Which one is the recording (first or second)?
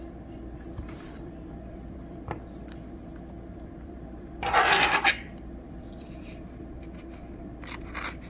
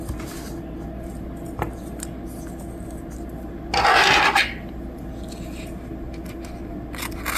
second